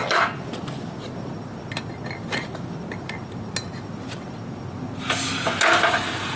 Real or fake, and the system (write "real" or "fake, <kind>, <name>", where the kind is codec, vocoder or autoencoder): real